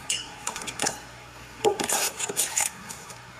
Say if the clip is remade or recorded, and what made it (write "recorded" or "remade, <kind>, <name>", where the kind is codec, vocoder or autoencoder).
remade, codec, SNAC